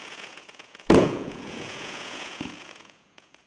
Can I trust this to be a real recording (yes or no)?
no